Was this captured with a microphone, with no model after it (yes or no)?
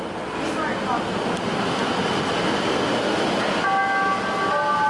yes